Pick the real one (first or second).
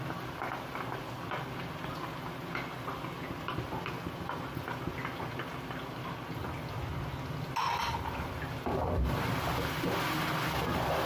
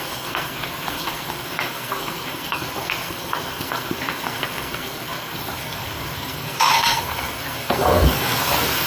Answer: first